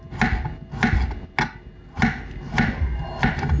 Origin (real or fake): real